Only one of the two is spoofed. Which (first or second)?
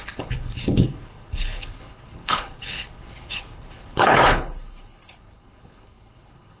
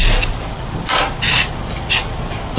first